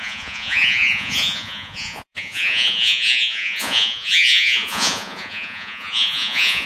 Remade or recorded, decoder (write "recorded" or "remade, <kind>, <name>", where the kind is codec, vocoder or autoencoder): remade, vocoder, Vocos